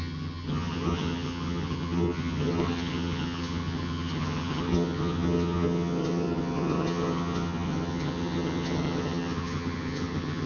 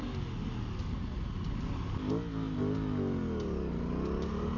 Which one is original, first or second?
second